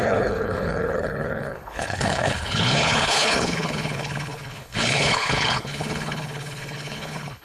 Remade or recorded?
remade